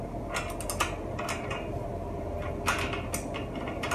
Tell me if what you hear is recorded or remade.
recorded